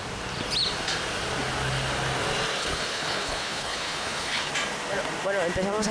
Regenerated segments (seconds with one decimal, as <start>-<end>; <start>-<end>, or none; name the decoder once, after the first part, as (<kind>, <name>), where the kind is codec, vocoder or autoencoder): 2.6-4.5 (codec, HILCodec)